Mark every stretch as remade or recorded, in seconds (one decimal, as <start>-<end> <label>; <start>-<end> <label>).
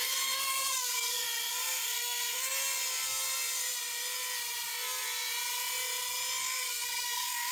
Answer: 0.0-2.6 remade; 2.6-6.4 recorded; 6.4-7.5 remade